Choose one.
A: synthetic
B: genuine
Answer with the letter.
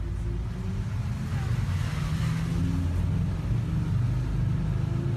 B